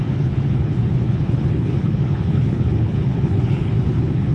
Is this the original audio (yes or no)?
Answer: no